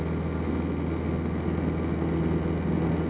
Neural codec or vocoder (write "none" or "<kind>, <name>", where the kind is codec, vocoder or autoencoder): none